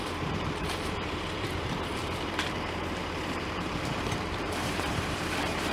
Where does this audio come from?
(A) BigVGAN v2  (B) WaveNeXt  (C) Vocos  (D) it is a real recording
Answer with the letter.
A